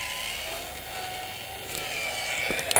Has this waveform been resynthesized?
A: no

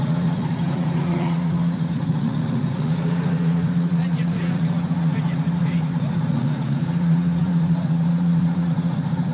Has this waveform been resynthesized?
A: yes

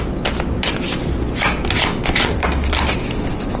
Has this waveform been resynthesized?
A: no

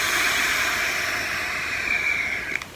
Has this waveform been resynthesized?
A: no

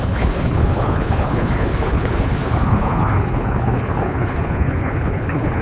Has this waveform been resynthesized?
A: yes